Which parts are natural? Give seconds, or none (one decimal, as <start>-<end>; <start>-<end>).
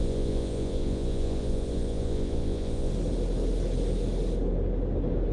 2.9-5.3